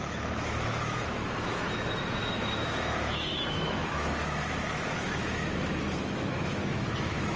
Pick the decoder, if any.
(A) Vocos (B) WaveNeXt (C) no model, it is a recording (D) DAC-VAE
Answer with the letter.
D